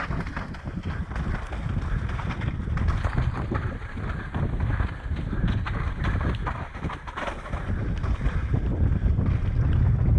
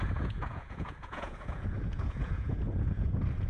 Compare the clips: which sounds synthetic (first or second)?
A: second